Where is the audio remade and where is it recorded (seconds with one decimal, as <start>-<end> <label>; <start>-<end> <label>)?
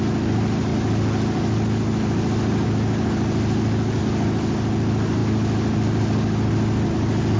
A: 0.0-7.4 recorded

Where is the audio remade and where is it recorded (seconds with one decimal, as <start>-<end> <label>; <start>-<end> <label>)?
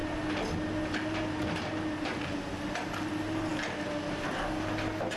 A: 0.0-5.2 recorded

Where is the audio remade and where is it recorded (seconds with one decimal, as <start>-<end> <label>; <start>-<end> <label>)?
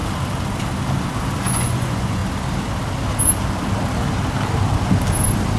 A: 0.0-1.4 recorded; 1.4-2.2 remade; 2.2-5.6 recorded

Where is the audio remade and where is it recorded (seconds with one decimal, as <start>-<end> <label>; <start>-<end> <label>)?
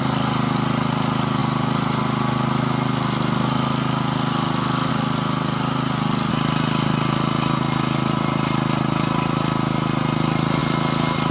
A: 0.0-11.3 recorded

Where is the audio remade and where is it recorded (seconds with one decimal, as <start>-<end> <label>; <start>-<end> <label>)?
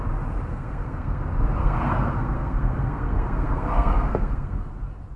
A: 0.0-0.5 recorded; 0.5-1.2 remade; 1.2-1.6 recorded; 1.6-4.7 remade; 4.7-5.2 recorded